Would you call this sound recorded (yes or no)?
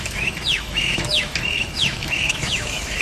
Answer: no